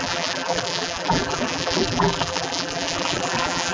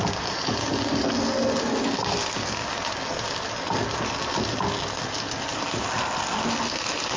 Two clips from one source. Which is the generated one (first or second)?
first